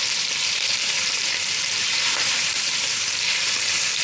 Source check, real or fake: fake